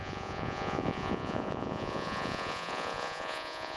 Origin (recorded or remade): remade